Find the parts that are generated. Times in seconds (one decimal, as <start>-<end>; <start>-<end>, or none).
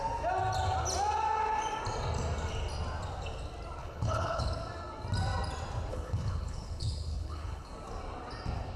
3.8-4.5; 5.9-7.7